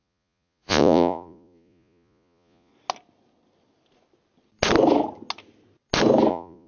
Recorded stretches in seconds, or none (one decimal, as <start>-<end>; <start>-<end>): 2.7-6.3